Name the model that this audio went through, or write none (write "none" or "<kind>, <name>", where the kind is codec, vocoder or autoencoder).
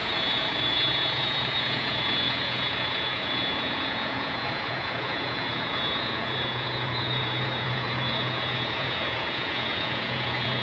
vocoder, Vocos